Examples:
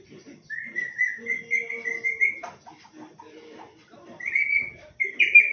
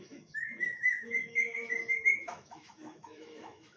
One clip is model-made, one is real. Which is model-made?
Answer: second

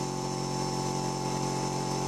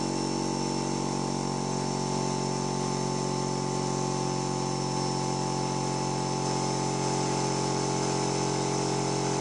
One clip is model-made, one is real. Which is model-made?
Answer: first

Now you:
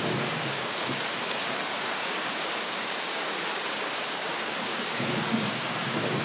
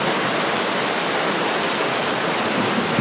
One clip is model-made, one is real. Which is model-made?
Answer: first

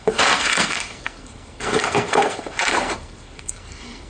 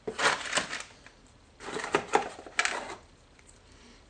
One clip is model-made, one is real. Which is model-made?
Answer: first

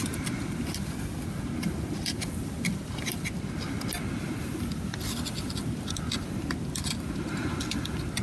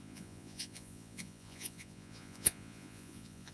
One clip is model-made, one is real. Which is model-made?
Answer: second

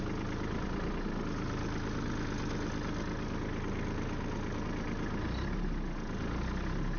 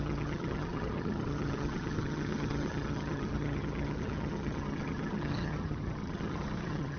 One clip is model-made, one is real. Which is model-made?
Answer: second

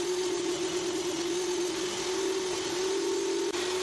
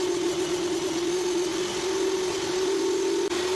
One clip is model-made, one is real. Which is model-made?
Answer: second